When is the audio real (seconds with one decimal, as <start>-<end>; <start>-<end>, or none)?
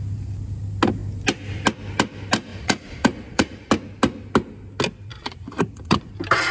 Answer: 0.0-2.5; 3.7-5.1; 6.1-6.5